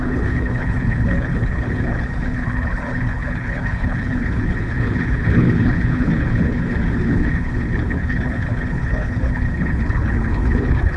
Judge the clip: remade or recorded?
remade